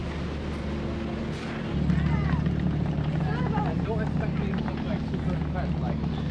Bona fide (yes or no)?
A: yes